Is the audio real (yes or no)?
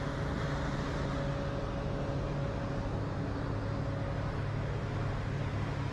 yes